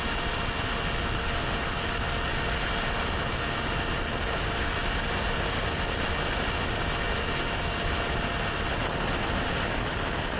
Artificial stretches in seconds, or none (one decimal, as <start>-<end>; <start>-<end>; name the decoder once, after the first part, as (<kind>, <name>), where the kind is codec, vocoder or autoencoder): none